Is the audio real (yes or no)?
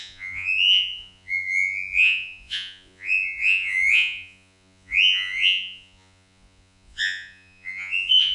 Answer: no